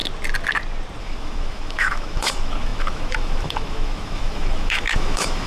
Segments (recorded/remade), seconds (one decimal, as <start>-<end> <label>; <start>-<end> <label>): 0.0-1.0 recorded; 1.0-5.5 remade